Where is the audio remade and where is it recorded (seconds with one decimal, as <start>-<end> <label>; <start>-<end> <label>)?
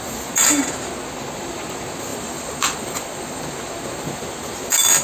0.0-2.1 recorded; 2.1-3.4 remade; 3.4-5.0 recorded